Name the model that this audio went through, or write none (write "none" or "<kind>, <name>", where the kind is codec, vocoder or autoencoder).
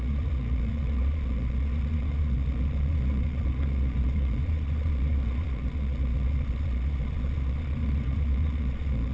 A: vocoder, Vocos